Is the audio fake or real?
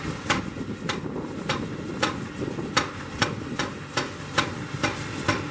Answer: real